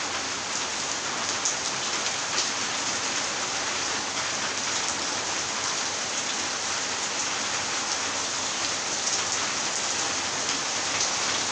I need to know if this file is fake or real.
real